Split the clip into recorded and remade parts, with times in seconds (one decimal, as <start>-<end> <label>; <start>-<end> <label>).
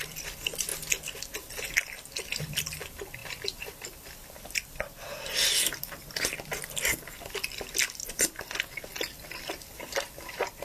0.0-0.7 remade; 0.7-1.8 recorded; 1.8-8.9 remade; 8.9-9.5 recorded; 9.5-10.6 remade